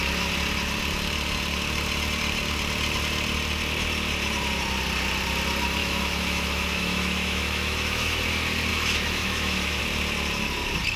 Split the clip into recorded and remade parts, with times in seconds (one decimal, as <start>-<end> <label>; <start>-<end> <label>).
0.0-5.8 recorded; 5.8-8.2 remade; 8.2-8.7 recorded; 8.7-9.8 remade; 9.8-11.0 recorded